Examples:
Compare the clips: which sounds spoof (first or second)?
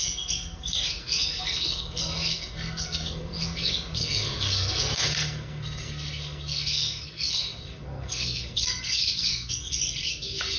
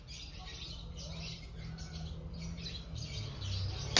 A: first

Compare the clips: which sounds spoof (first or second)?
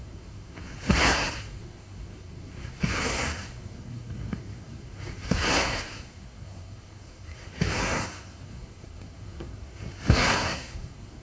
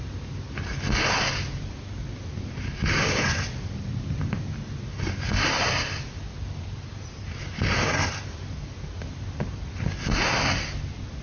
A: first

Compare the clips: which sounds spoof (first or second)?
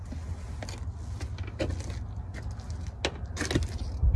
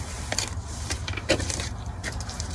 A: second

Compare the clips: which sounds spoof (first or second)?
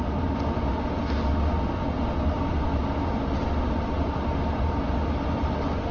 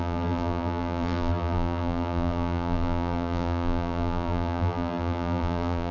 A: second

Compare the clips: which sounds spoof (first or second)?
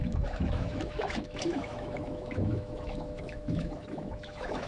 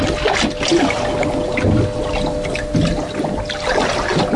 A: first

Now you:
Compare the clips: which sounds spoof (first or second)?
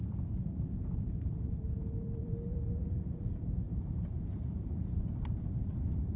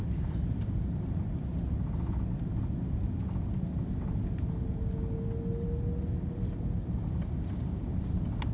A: first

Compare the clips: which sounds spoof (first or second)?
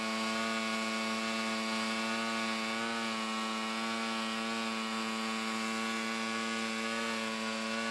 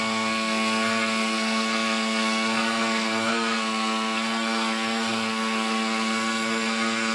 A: second